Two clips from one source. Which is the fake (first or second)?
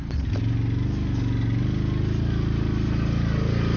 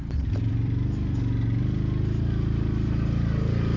second